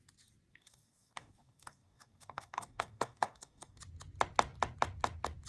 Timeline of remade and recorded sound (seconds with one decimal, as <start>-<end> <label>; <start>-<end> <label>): 0.0-0.5 recorded; 0.5-3.8 remade; 3.8-5.5 recorded